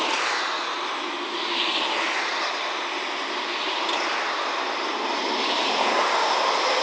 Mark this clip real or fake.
real